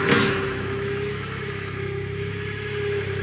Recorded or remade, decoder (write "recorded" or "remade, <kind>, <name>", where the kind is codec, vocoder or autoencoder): remade, autoencoder, DAC-VAE